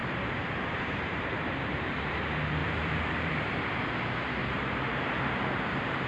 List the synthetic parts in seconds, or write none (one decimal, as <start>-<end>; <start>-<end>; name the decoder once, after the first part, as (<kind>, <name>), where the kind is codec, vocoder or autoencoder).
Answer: 0.0-2.1 (vocoder, BigVGAN v2); 2.6-3.3; 4.4-6.1